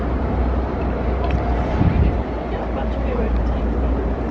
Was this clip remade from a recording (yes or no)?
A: yes